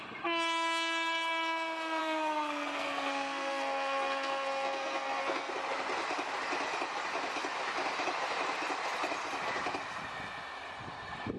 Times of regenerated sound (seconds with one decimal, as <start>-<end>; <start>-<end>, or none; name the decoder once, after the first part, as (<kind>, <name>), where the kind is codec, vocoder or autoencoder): 2.0-5.5 (codec, SNAC)